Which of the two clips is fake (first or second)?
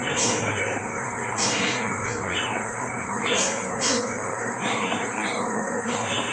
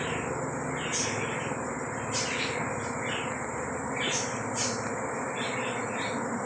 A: first